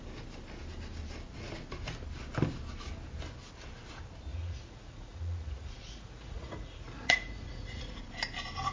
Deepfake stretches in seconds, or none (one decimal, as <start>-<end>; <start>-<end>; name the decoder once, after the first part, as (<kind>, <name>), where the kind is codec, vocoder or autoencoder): 4.3-8.0 (vocoder, Vocos)